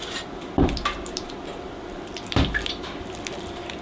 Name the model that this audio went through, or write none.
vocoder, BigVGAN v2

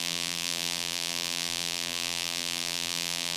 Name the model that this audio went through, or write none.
vocoder, BigVGAN v2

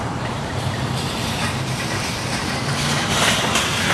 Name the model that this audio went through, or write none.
vocoder, BigVGAN v2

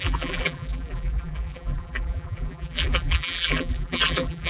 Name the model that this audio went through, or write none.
vocoder, BigVGAN v2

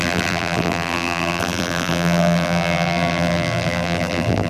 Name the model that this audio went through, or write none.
vocoder, BigVGAN v2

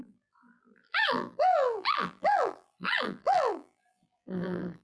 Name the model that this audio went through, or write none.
vocoder, BigVGAN v2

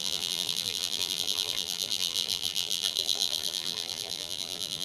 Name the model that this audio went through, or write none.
vocoder, BigVGAN v2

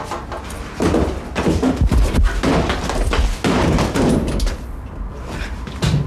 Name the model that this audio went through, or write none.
none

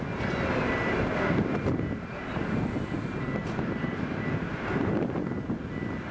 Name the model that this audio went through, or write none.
none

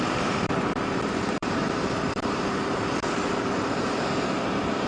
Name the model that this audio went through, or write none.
vocoder, BigVGAN v2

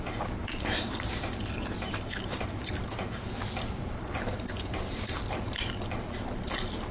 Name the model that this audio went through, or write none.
vocoder, BigVGAN v2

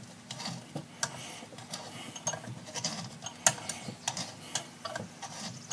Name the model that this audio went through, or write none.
none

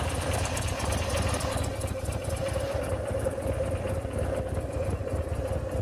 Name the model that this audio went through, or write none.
vocoder, BigVGAN v2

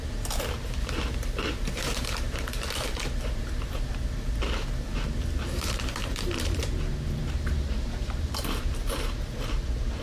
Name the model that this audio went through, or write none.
vocoder, BigVGAN v2